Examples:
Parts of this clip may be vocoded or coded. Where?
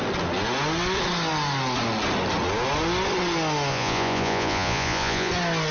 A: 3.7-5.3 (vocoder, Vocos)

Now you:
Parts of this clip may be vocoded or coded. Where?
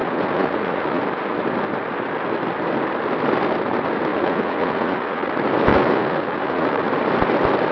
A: 0.0-1.0 (vocoder, Vocos); 4.1-5.3; 5.7-6.9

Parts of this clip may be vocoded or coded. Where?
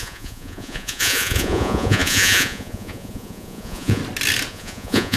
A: 0.0-4.0 (vocoder, Vocos); 4.5-5.2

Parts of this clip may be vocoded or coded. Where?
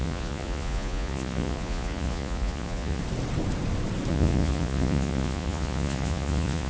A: 0.0-3.0 (vocoder, Vocos); 4.1-6.7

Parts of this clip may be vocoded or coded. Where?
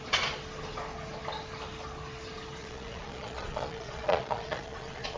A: 2.6-5.2 (vocoder, Vocos)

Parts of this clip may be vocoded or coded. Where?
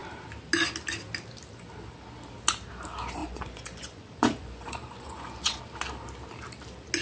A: 3.2-5.6 (vocoder, Vocos)